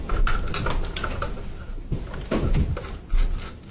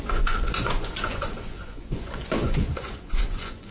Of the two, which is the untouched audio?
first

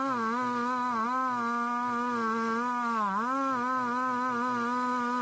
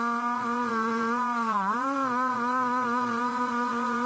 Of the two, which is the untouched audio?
first